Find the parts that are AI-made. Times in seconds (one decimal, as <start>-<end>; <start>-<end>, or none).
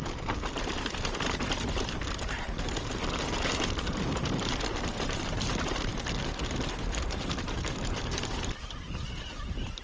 0.0-5.9; 6.4-9.8